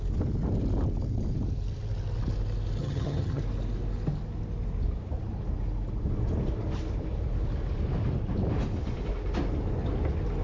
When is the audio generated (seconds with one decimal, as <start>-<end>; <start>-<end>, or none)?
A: 2.8-3.4